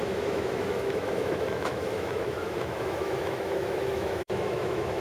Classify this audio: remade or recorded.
remade